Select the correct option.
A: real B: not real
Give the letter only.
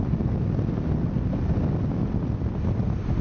A